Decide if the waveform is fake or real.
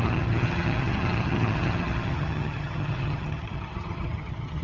fake